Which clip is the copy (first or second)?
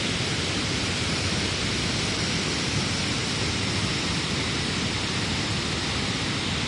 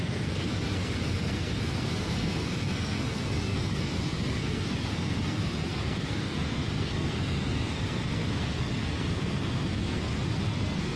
second